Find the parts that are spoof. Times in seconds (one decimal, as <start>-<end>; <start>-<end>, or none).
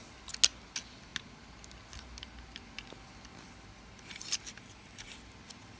none